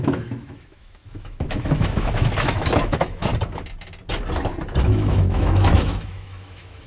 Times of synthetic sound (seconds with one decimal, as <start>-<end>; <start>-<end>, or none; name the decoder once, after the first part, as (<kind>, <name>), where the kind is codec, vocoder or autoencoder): 0.0-3.3 (autoencoder, DAC-VAE); 4.8-6.9